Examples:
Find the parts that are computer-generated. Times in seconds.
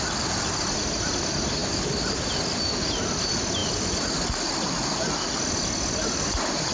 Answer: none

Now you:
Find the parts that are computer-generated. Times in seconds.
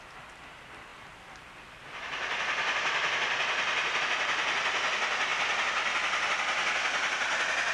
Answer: 0.9-4.0 (vocoder, BigVGAN v2); 5.3-6.3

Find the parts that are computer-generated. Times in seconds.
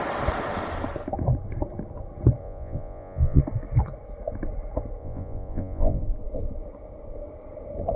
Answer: 2.4-3.4 (vocoder, Vocos); 5.0-6.0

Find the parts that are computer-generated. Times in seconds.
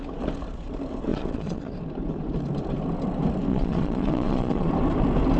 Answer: 1.1-1.7 (vocoder, Vocos); 3.5-4.7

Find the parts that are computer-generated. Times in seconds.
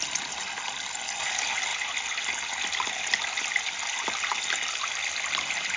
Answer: none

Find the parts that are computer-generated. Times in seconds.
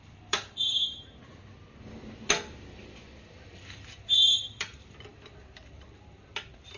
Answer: 0.0-0.8 (vocoder, BigVGAN v2); 3.3-6.8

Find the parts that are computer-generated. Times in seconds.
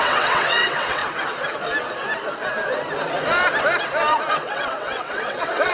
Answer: 0.0-1.0 (vocoder, WaveNeXt); 4.3-5.7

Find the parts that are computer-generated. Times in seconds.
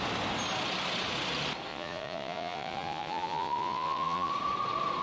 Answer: 1.7-4.3 (vocoder, Vocos)